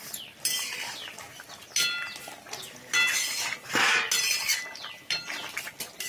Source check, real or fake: real